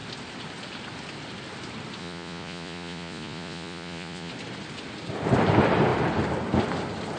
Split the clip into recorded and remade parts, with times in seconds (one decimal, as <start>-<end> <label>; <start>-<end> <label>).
0.0-2.0 recorded; 2.0-4.3 remade; 4.3-7.2 recorded